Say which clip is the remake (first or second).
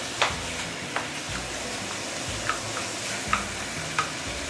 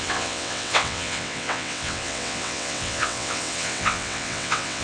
second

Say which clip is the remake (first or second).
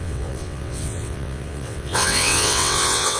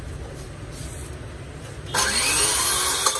first